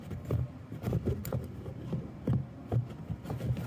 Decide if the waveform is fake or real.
real